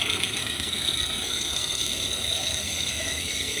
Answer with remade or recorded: remade